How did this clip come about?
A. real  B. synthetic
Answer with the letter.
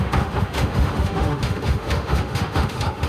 B